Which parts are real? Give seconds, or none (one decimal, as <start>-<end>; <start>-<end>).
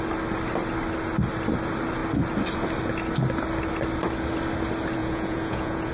0.0-5.0